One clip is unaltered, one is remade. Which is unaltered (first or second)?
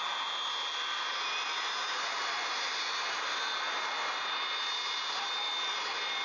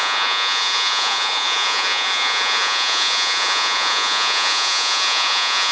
first